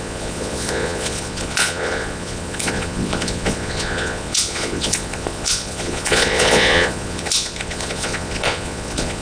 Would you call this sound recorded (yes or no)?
no